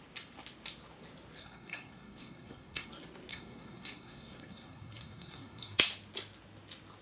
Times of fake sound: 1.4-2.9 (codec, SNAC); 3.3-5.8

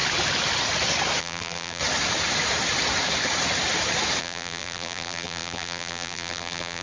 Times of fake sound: 1.2-1.8 (vocoder, BigVGAN v2); 4.2-6.8